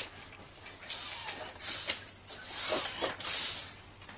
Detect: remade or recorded recorded